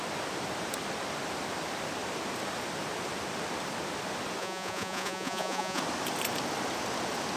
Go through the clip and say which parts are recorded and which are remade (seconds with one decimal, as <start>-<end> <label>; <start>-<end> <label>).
0.0-4.4 recorded; 4.4-5.8 remade; 5.8-7.4 recorded